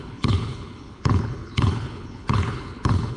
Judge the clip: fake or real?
fake